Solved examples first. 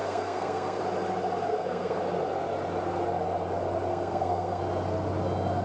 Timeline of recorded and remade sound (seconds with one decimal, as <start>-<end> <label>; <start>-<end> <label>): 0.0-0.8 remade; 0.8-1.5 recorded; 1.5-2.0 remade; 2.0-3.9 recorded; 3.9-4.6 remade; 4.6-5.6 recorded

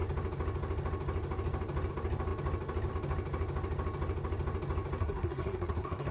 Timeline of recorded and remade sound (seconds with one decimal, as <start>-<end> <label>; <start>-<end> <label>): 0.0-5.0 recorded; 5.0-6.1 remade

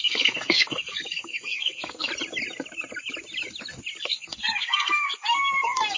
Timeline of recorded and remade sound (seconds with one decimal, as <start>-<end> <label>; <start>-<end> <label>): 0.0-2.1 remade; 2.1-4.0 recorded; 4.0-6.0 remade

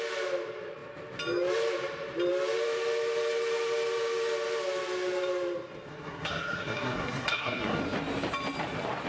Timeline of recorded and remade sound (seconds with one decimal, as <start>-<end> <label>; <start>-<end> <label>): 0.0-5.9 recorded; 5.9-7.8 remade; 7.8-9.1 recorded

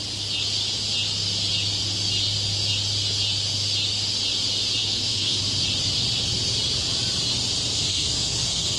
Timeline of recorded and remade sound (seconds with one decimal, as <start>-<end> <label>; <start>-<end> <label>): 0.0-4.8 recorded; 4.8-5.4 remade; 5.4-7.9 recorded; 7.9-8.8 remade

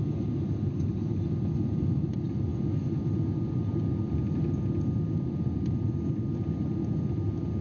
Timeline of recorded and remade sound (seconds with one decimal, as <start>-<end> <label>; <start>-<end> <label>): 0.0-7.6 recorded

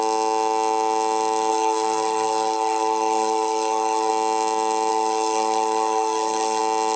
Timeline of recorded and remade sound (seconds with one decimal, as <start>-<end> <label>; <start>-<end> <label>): 0.0-1.5 recorded; 1.5-4.1 remade; 4.1-4.9 recorded; 4.9-6.6 remade; 6.6-7.0 recorded

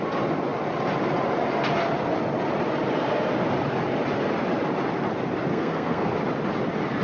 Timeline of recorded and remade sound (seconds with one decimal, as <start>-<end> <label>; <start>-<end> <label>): 0.0-5.5 recorded; 5.5-6.1 remade; 6.1-7.0 recorded